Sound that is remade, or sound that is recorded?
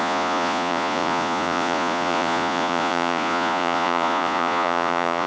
remade